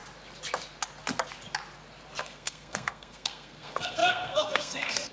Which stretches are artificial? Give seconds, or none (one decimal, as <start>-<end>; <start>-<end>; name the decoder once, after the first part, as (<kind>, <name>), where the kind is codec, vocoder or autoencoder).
2.2-5.1 (codec, SNAC)